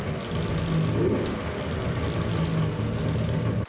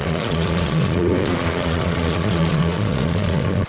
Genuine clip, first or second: first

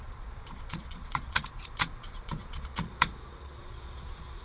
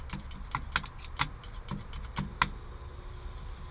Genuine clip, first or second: second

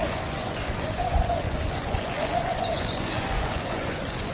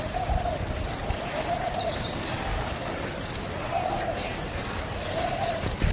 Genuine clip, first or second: second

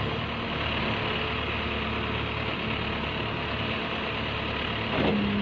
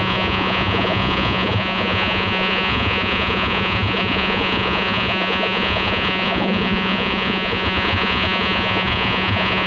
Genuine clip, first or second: first